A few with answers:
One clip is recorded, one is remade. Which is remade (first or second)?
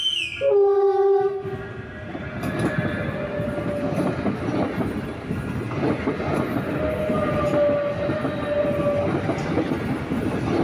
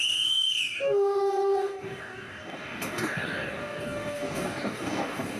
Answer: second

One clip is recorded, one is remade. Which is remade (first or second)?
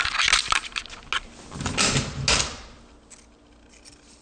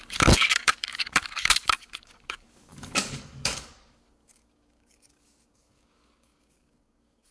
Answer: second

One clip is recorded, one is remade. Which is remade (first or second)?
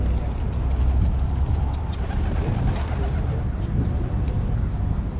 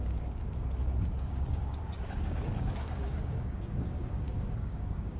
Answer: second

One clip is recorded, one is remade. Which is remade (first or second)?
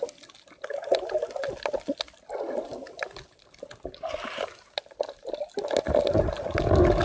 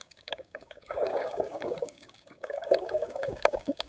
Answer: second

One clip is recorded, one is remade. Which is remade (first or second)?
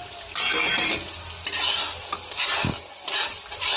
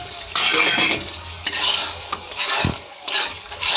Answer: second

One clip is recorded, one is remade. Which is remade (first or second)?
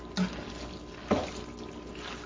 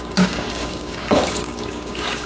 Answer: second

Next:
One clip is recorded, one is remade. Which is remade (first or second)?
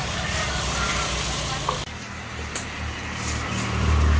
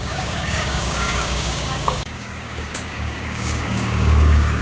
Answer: second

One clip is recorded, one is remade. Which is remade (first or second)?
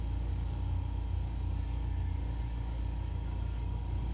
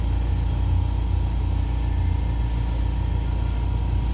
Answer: first